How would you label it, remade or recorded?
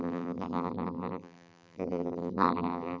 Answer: remade